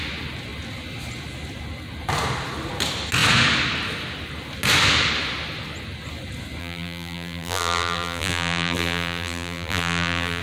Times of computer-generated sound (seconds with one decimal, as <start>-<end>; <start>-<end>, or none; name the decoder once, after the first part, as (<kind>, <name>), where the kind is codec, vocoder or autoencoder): 6.6-10.4 (vocoder, BigVGAN v2)